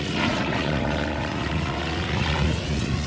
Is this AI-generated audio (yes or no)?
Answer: yes